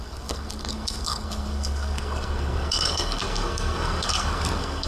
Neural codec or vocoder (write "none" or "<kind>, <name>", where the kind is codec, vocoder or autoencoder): codec, SNAC